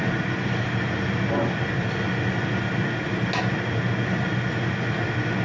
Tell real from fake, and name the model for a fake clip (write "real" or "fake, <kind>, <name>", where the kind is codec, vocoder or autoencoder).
real